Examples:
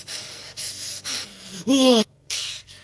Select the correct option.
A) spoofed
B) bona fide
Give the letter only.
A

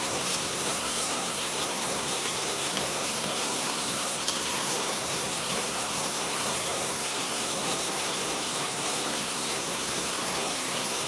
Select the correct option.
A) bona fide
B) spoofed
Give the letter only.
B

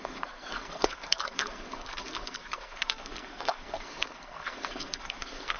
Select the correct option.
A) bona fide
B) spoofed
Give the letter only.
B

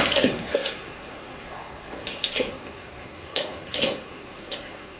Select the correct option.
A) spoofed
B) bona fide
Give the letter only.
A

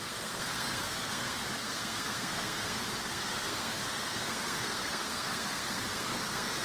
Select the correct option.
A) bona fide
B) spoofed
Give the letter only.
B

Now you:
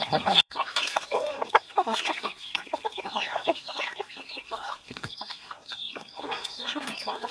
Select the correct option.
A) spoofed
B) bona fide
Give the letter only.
A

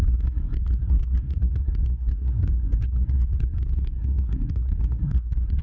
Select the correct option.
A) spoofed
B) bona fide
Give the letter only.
A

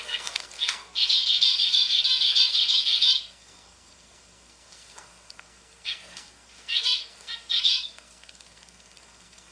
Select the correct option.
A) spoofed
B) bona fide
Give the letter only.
A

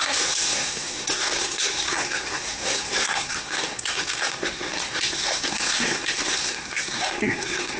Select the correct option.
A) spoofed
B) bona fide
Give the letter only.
A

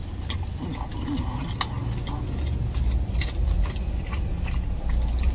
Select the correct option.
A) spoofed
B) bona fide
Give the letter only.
B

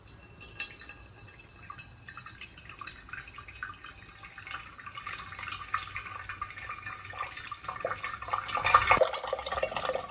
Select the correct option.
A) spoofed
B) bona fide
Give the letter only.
B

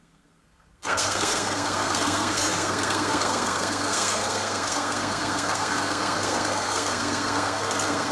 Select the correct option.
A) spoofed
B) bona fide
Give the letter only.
A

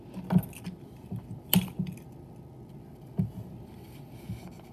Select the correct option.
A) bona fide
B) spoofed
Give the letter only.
A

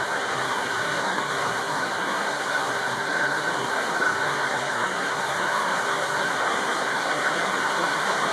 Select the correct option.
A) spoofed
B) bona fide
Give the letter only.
A